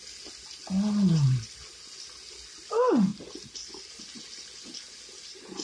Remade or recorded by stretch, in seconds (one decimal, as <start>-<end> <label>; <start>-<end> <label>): 0.0-5.6 recorded